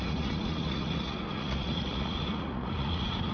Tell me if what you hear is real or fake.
fake